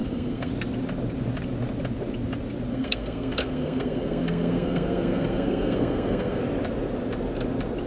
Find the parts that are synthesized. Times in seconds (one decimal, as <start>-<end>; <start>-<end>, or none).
0.0-0.5; 2.7-6.4